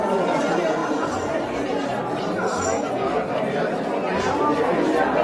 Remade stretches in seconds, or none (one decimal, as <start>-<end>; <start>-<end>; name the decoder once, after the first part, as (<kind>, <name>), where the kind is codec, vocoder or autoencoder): 0.8-1.4 (vocoder, BigVGAN v2)